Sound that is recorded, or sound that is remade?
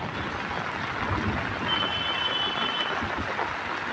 recorded